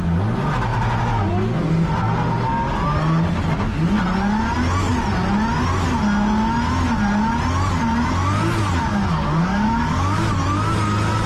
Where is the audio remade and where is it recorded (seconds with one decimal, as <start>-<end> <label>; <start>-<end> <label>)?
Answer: 0.0-8.9 recorded; 8.9-10.3 remade; 10.3-11.3 recorded